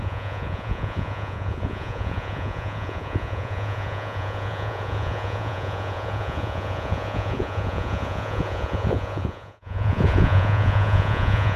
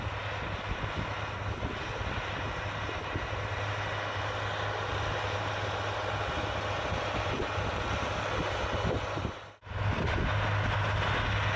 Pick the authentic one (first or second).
second